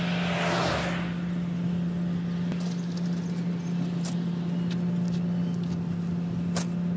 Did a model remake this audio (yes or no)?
no